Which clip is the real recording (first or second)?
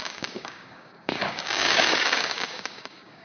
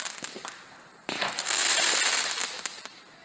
second